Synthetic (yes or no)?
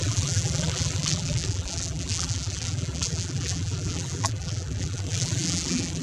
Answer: yes